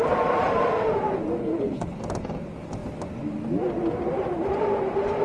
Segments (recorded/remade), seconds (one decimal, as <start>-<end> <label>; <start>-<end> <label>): 0.0-1.4 recorded; 1.4-2.0 remade; 2.0-5.2 recorded